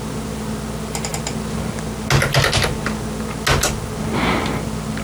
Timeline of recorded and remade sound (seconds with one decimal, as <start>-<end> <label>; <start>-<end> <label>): 0.0-5.0 recorded